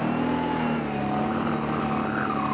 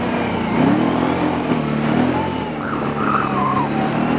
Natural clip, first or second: first